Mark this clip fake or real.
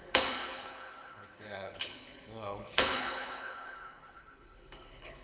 fake